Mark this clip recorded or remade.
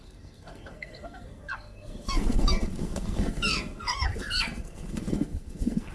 remade